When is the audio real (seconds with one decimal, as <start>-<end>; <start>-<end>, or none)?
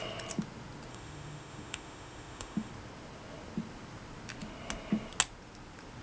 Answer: 0.0-0.9; 2.7-6.0